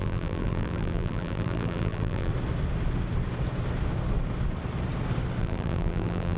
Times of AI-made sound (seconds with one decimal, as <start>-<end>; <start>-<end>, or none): 0.0-2.3; 5.4-6.4